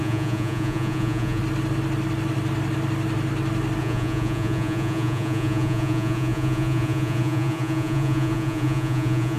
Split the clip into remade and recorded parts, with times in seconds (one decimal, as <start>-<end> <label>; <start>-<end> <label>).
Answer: 0.0-1.4 remade; 1.4-3.8 recorded; 3.8-9.4 remade